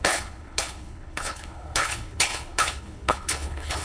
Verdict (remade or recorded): remade